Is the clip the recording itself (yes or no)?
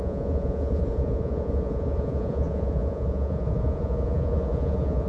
no